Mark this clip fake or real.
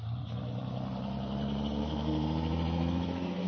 real